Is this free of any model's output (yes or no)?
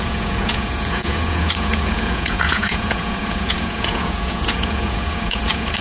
no